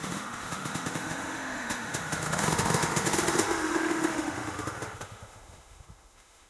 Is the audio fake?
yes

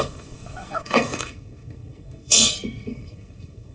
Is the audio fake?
yes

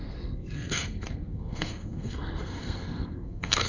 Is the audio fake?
yes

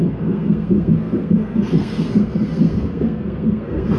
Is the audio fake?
yes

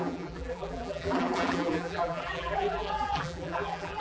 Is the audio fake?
yes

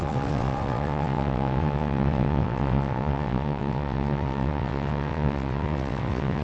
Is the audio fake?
yes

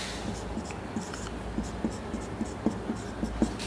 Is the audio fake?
no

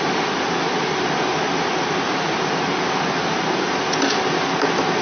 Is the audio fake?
no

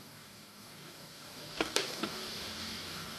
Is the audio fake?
yes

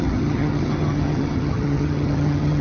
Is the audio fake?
yes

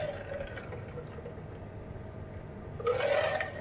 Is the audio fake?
no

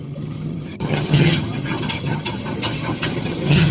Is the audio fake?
yes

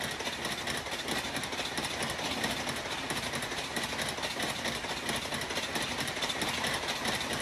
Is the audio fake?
no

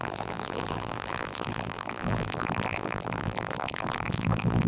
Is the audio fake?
yes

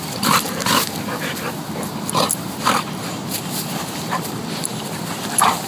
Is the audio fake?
yes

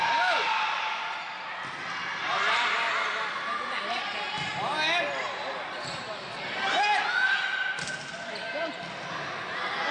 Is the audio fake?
no